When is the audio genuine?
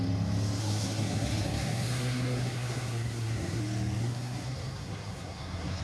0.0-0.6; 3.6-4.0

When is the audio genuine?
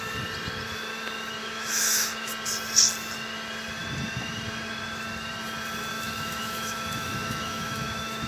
0.0-1.4; 2.3-5.9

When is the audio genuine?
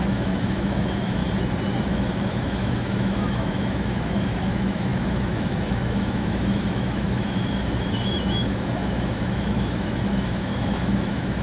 1.2-1.8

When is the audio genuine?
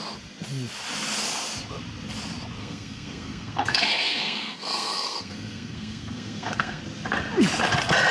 0.0-2.6; 6.8-8.1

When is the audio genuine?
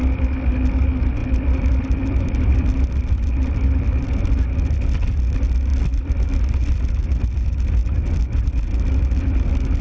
0.0-1.2; 5.3-5.7; 6.8-7.8; 8.5-9.8